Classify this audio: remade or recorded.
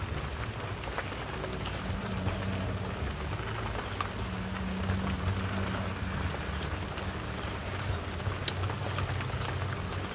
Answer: recorded